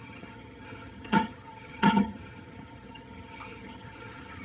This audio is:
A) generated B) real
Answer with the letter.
A